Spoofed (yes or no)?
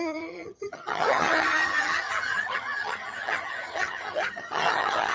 yes